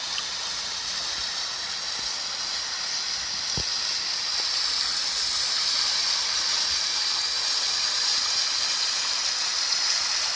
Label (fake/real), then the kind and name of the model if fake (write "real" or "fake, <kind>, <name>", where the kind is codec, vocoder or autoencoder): real